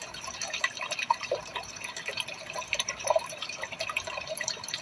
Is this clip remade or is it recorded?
remade